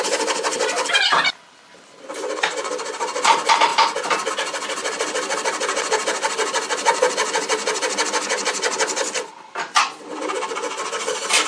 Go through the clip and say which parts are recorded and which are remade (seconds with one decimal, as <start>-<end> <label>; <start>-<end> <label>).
0.0-11.5 recorded